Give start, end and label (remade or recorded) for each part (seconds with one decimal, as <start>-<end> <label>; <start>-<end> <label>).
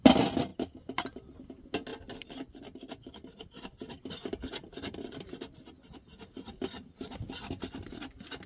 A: 0.0-0.5 recorded; 0.5-1.1 remade; 1.1-1.9 recorded; 1.9-5.5 remade; 5.5-8.5 recorded